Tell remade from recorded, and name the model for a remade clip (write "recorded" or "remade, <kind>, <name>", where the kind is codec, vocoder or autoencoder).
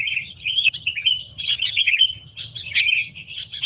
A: remade, vocoder, HiFi-GAN